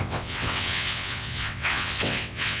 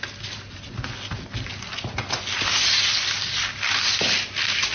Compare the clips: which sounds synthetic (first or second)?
first